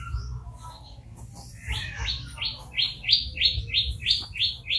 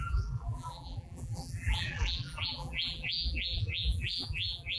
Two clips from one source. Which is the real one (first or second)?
first